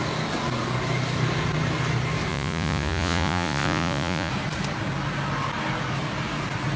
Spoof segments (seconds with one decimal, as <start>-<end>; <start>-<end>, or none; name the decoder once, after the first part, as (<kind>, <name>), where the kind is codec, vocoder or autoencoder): 2.3-4.3 (vocoder, Vocos)